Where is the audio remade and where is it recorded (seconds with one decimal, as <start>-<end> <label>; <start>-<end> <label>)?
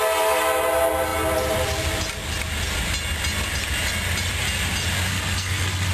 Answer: 0.0-5.1 recorded; 5.1-5.9 remade